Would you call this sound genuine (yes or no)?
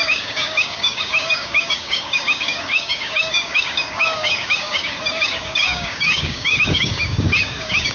no